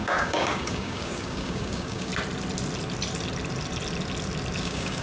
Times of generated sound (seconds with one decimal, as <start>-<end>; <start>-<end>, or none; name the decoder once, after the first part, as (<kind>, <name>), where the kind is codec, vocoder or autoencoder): 0.0-2.1 (codec, DAC); 4.6-5.0